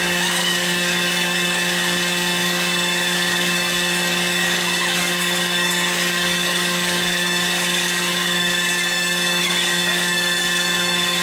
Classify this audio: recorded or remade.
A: remade